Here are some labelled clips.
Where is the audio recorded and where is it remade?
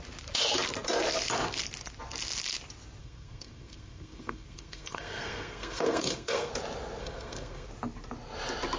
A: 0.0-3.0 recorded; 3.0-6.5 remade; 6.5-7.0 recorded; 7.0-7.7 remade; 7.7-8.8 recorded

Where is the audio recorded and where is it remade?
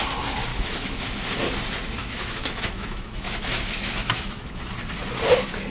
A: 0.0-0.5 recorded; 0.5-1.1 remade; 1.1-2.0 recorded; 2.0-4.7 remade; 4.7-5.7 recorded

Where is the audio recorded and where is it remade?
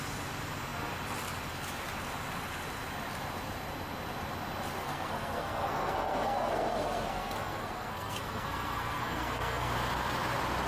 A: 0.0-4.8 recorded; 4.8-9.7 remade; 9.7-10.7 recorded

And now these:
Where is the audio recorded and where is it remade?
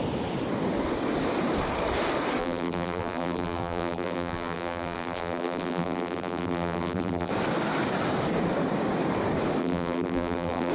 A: 0.0-2.4 recorded; 2.4-7.3 remade; 7.3-9.6 recorded; 9.6-10.7 remade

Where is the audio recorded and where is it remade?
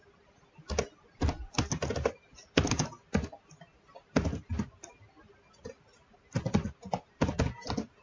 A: 0.0-8.0 recorded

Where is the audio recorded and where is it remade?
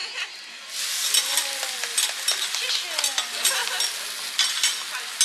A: 0.0-1.9 recorded; 1.9-2.7 remade; 2.7-5.2 recorded